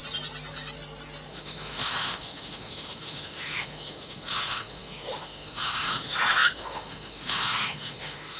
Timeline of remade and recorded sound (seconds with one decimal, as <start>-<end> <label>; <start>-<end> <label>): 0.0-1.3 recorded; 1.3-8.4 remade